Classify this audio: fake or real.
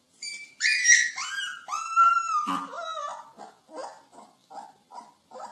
real